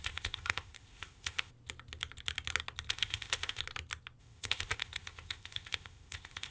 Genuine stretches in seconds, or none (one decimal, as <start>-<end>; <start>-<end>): 1.5-2.9; 3.6-4.2